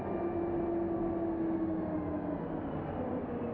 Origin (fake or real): real